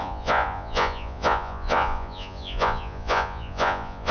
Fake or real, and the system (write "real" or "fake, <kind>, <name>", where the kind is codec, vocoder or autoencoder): fake, vocoder, Vocos